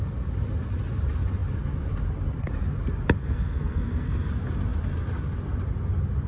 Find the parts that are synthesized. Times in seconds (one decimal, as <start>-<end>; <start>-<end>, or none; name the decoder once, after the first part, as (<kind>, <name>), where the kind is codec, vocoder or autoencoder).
3.2-4.3 (codec, SNAC)